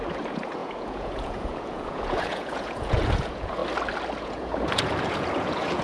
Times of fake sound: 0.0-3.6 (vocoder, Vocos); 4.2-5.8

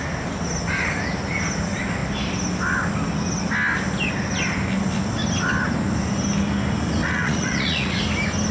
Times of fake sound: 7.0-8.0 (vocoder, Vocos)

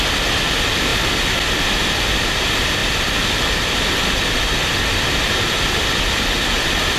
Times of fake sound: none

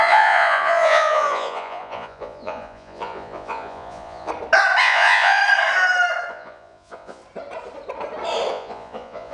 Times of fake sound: 0.0-4.3 (vocoder, Vocos); 4.8-5.4; 6.3-7.2; 8.5-9.3

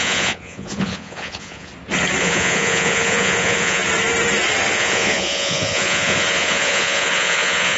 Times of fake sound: 0.0-1.7 (vocoder, Vocos); 2.2-3.8; 4.7-7.8